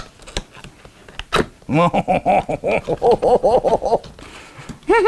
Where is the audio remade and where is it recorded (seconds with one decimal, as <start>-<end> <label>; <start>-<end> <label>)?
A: 0.0-5.1 recorded